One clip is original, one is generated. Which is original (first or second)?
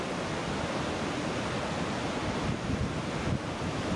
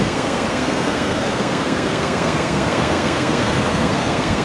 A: first